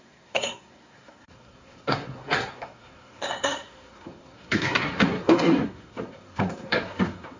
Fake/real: fake